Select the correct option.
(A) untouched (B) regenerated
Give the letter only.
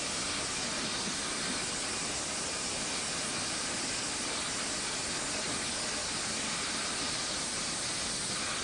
A